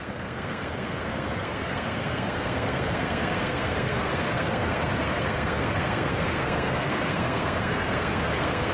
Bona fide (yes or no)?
no